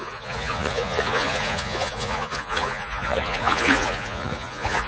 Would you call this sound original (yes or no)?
no